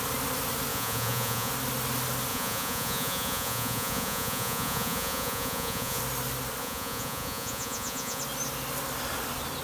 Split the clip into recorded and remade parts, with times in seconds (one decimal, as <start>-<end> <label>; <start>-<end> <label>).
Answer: 0.0-0.7 recorded; 0.7-1.5 remade; 1.5-2.3 recorded; 2.3-6.0 remade; 6.0-6.6 recorded; 6.6-8.2 remade; 8.2-9.6 recorded